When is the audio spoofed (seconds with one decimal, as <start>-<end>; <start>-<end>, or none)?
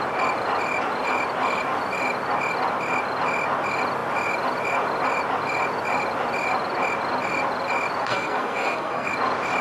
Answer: 8.0-9.1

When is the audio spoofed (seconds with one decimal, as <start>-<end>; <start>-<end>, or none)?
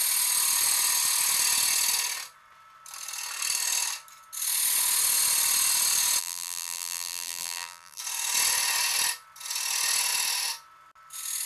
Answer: 6.2-8.0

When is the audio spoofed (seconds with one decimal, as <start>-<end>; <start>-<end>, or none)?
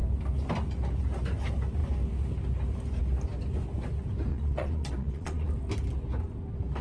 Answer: 4.3-5.5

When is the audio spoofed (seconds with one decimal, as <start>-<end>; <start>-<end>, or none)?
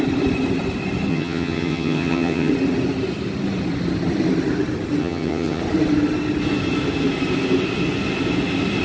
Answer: 1.1-2.5; 5.0-5.6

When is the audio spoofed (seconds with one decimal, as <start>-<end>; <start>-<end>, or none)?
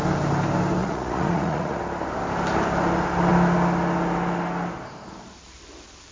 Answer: 0.8-1.8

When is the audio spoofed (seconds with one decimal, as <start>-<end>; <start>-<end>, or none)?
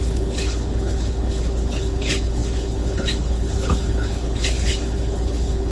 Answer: 0.0-5.7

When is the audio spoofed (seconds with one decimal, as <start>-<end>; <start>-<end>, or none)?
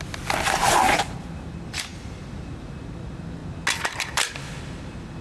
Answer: none